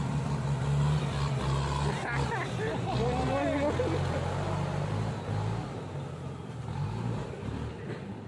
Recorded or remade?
recorded